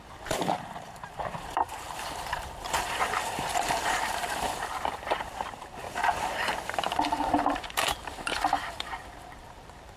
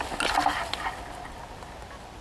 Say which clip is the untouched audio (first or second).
second